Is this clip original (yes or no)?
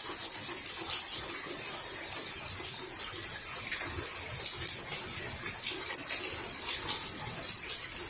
yes